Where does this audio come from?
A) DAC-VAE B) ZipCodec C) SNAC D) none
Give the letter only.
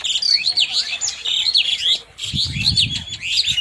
D